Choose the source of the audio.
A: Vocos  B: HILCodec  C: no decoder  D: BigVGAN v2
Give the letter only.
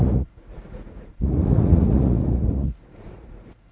A